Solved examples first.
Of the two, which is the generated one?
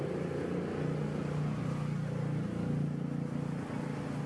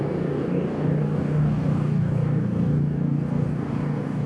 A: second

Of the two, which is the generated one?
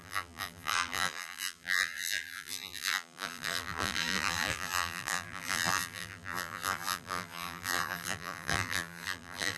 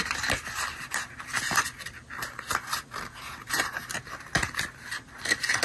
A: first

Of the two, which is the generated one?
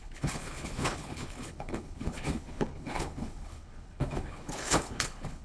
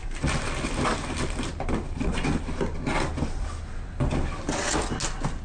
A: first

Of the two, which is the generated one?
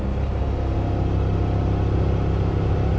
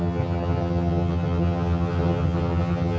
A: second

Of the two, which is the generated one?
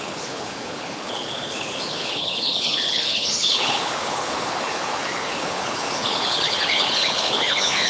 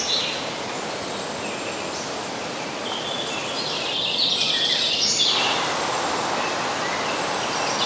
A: first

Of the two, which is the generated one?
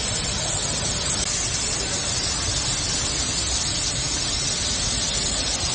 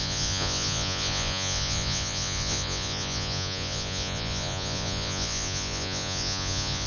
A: second